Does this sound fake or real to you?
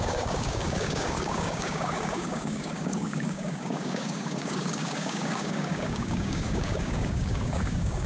fake